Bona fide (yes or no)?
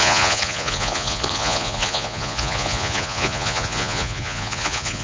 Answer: no